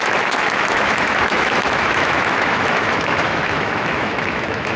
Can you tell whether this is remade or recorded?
remade